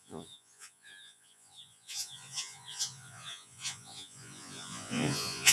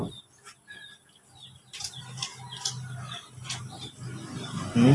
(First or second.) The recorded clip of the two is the second